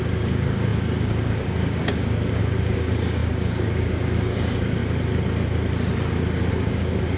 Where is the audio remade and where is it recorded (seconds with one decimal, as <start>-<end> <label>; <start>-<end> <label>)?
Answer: 0.0-4.8 remade; 4.8-6.5 recorded; 6.5-7.2 remade